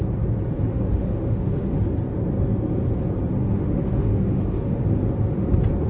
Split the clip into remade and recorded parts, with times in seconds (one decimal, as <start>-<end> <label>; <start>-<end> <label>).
0.0-0.7 recorded; 0.7-1.8 remade; 1.8-3.4 recorded; 3.4-4.8 remade; 4.8-5.9 recorded